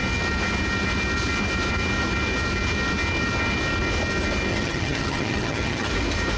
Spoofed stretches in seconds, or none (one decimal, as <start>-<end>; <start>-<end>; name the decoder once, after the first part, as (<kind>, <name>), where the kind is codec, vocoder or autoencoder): 4.5-5.9 (vocoder, HiFi-GAN)